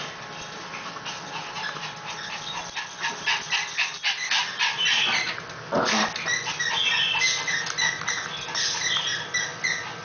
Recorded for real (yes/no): yes